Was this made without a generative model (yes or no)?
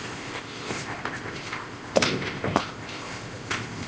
no